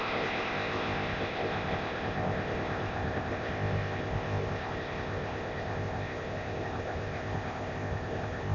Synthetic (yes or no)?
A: yes